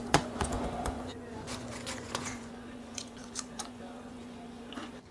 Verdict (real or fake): fake